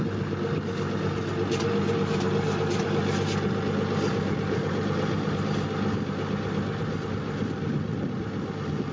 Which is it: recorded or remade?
recorded